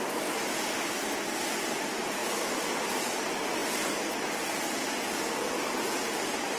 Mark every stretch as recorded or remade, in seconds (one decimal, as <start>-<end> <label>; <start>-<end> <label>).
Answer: 0.0-6.6 recorded